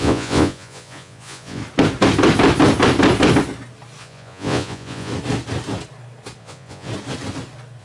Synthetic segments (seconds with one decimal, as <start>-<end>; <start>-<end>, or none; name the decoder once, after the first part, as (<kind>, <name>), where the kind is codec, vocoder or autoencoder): 0.0-1.6 (vocoder, Vocos); 4.0-5.1; 6.4-6.9

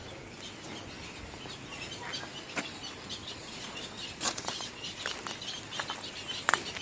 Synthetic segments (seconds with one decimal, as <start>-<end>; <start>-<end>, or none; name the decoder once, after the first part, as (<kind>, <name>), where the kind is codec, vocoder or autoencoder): 3.2-5.0 (vocoder, Vocos)

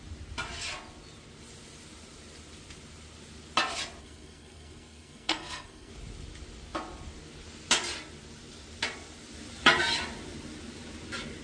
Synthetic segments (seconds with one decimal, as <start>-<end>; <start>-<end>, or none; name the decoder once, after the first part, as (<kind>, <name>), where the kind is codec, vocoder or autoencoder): 4.0-5.9 (codec, SNAC)

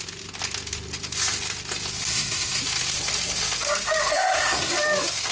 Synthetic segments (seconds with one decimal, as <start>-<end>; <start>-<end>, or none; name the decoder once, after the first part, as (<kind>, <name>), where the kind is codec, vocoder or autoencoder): 2.1-2.6 (codec, SNAC); 4.1-4.7

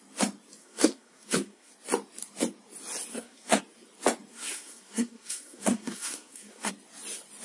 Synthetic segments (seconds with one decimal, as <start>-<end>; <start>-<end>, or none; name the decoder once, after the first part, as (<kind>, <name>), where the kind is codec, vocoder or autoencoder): 0.6-1.7 (codec, SNAC); 3.1-3.6; 4.3-6.7